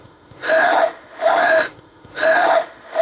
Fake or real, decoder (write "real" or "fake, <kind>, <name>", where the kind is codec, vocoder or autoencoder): fake, autoencoder, DAC-VAE